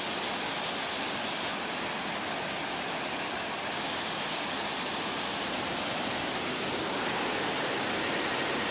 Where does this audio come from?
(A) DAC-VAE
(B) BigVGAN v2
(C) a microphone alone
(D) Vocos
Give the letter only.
C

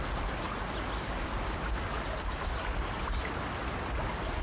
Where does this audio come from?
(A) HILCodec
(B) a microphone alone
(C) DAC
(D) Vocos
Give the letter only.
B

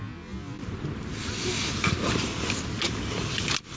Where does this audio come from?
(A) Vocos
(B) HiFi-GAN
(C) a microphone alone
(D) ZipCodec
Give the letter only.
C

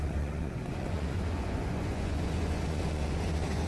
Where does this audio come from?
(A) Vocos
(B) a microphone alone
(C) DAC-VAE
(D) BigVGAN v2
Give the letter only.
A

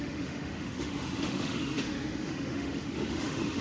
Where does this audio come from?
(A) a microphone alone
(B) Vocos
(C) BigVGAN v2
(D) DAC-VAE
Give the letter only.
D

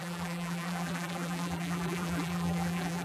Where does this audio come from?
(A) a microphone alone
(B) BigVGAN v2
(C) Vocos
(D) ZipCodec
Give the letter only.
B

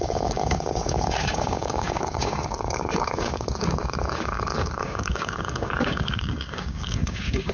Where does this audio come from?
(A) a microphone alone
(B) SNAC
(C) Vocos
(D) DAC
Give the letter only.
D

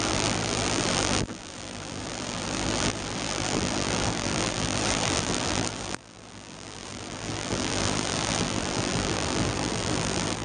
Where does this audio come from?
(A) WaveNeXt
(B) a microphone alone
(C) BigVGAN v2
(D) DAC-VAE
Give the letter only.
C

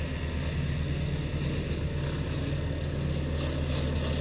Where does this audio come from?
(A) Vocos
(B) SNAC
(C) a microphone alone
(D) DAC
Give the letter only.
C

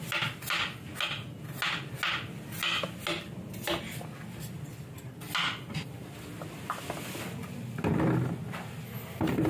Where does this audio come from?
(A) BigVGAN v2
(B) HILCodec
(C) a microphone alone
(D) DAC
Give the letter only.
C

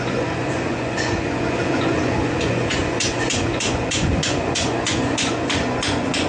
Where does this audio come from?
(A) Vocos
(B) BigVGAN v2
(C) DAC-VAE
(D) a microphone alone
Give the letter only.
A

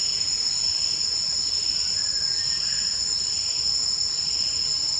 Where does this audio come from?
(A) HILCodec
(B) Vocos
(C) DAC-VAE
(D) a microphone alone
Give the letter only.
D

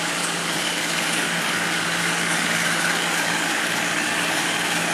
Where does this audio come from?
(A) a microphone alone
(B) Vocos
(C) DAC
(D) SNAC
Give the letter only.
C